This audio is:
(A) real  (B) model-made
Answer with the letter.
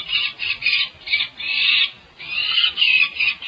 A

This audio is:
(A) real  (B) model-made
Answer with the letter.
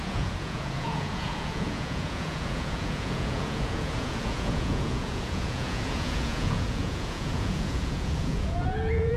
B